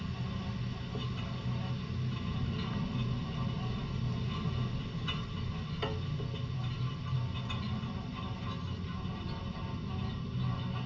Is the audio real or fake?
real